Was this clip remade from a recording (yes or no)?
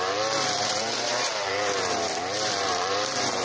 yes